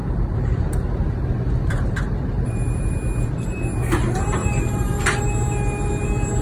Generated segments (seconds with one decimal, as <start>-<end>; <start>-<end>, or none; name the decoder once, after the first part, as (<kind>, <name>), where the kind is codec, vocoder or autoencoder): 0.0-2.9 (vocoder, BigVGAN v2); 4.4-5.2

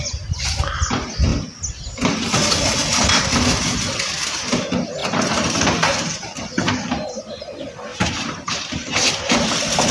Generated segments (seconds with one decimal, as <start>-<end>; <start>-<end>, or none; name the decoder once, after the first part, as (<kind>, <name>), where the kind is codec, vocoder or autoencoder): 5.0-7.3 (vocoder, BigVGAN v2); 7.9-9.5

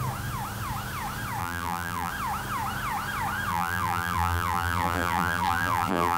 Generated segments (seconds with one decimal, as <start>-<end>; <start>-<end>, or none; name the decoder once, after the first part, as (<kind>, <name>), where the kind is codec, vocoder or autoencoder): 1.4-2.1 (vocoder, BigVGAN v2); 3.5-6.2

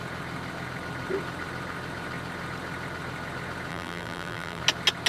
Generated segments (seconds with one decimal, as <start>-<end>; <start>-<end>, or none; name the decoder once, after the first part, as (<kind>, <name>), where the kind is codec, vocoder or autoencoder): 3.7-4.6 (vocoder, BigVGAN v2)